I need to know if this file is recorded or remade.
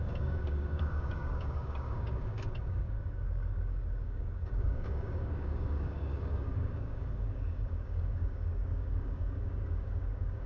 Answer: remade